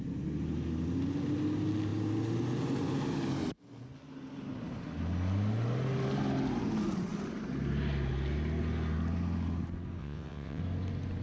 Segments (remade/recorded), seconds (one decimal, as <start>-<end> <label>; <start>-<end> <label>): 0.0-10.0 recorded; 10.0-10.6 remade; 10.6-11.2 recorded